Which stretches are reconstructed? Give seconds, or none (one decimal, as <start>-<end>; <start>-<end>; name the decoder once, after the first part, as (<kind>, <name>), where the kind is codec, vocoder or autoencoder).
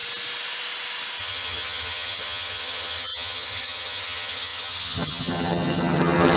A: 1.2-6.4 (vocoder, HiFi-GAN)